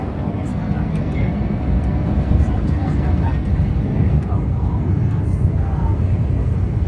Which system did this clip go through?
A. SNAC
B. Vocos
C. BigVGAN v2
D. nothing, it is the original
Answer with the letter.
A